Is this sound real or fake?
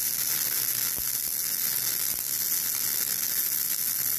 real